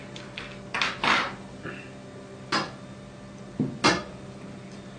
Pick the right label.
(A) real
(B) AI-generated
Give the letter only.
A